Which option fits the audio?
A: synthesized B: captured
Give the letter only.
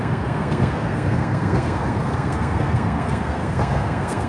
A